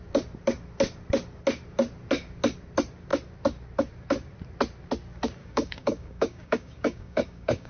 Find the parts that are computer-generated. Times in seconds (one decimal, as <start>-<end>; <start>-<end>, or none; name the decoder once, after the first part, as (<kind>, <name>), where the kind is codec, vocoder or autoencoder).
5.4-7.7 (codec, DAC)